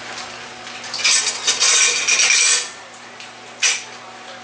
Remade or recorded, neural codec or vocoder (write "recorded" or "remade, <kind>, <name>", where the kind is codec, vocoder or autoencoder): recorded